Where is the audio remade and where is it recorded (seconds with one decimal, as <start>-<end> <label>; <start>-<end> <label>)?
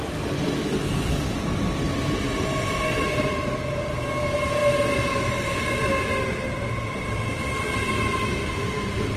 0.0-9.2 recorded